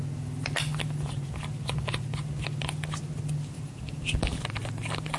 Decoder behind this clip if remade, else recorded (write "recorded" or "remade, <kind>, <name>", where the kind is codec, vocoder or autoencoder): recorded